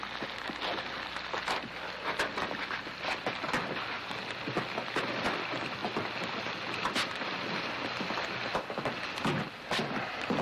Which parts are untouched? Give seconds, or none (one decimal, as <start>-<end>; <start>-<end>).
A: 0.0-10.4